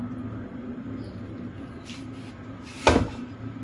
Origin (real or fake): real